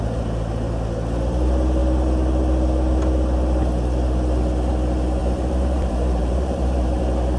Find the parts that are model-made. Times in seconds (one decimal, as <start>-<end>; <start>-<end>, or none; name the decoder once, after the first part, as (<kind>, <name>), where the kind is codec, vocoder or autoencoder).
5.2-7.0 (vocoder, BigVGAN v2)